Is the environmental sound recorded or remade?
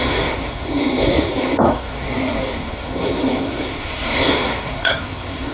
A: remade